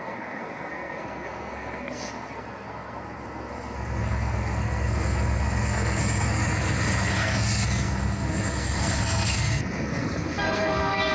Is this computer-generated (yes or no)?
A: yes